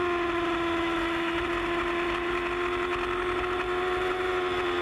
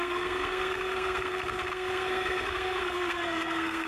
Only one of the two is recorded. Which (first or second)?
first